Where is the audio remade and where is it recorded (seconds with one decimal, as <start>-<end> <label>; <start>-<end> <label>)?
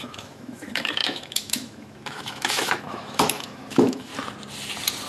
0.0-4.1 remade; 4.1-5.1 recorded